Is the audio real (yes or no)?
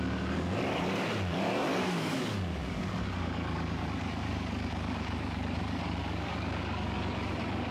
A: no